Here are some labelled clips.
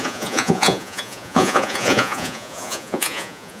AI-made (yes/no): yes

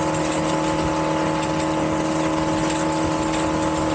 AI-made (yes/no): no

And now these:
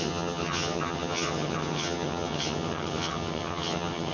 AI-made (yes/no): yes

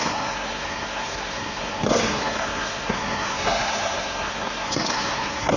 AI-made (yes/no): yes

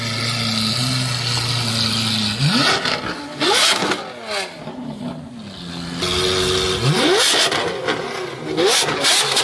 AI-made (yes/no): no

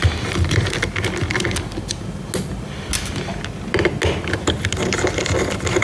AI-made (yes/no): no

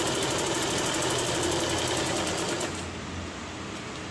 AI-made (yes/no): no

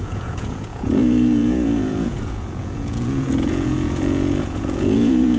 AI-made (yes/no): yes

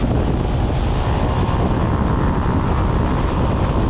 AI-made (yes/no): no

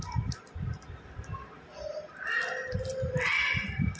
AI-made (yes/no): no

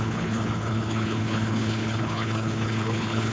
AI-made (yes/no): yes